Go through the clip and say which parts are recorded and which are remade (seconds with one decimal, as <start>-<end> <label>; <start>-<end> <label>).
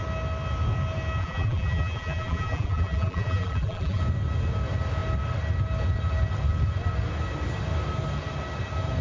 0.0-1.2 recorded; 1.2-4.0 remade; 4.0-9.0 recorded